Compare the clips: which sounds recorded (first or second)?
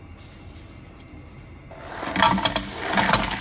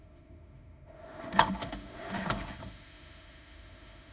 first